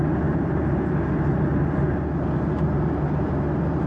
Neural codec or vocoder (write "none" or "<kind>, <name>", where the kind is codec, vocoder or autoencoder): none